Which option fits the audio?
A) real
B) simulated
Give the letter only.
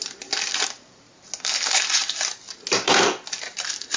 A